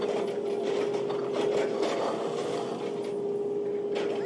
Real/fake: real